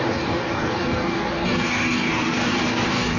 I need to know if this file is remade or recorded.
remade